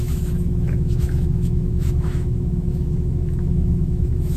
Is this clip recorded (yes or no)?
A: no